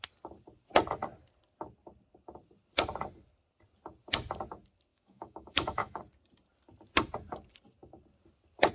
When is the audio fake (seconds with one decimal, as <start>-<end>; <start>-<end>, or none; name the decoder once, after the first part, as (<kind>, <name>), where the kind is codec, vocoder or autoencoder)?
4.9-6.0 (autoencoder, DAC-VAE)